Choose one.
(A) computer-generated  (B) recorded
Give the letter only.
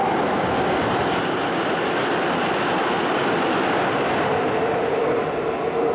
B